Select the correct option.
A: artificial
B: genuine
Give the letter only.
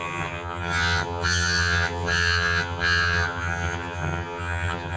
A